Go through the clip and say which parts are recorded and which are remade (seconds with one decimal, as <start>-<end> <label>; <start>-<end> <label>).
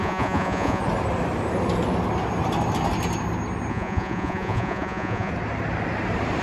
0.0-0.8 remade; 0.8-3.7 recorded; 3.7-5.3 remade; 5.3-6.4 recorded